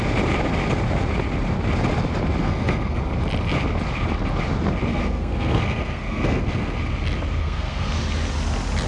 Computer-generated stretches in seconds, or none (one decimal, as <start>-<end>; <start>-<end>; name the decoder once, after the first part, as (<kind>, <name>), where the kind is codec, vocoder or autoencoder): 2.4-3.0 (codec, SNAC); 4.9-6.8; 7.4-7.9

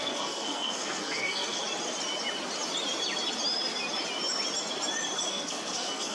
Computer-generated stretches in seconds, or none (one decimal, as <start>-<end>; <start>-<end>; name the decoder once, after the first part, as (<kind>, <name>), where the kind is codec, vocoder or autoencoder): 0.0-1.6 (codec, SNAC); 5.3-6.1

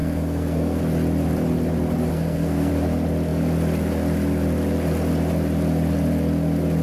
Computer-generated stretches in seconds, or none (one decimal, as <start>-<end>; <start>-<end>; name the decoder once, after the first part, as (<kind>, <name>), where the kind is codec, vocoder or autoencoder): 0.0-0.8 (codec, SNAC); 2.1-2.7

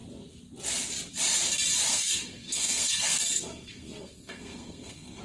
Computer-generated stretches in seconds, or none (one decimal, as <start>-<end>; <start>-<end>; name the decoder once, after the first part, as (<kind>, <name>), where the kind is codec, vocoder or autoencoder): 1.9-5.2 (codec, SNAC)

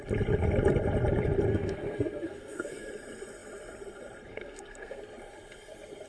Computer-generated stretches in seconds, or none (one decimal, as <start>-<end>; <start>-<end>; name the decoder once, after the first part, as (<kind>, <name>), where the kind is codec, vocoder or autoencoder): 1.5-2.9 (codec, SNAC); 4.3-5.0

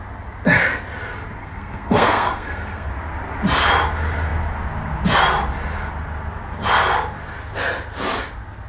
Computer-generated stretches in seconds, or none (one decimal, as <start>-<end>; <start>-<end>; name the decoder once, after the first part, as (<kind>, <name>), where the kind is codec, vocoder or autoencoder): 1.4-2.9 (codec, SNAC)